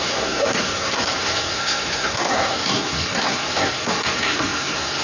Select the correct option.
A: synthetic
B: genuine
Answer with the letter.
A